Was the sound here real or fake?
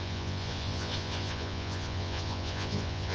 fake